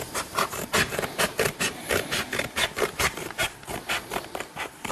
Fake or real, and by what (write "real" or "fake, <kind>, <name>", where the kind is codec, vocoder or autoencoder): fake, vocoder, BigVGAN v2